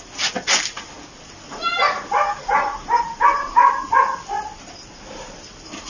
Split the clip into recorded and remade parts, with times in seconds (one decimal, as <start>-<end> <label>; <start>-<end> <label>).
0.0-1.7 recorded; 1.7-4.2 remade; 4.2-5.9 recorded